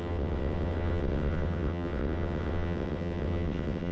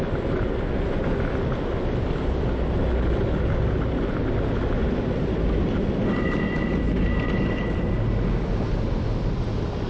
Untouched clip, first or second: second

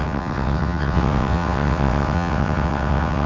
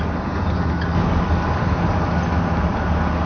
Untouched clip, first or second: second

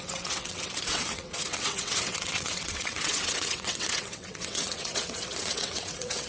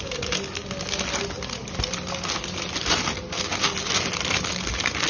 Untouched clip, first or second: second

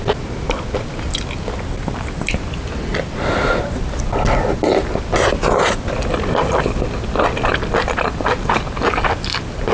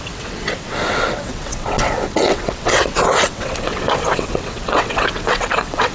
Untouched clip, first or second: first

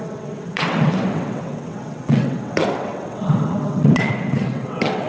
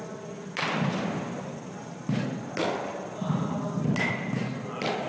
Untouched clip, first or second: second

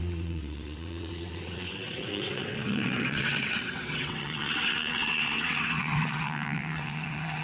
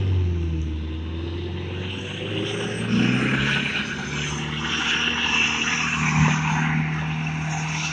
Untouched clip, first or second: second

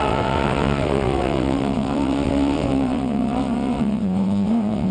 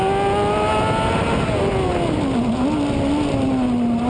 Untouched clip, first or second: second